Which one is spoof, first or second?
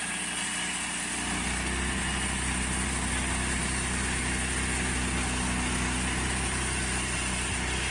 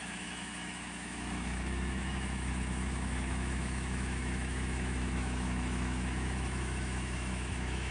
second